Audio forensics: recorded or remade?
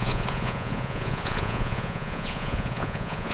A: remade